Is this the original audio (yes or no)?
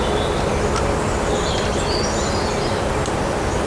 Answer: yes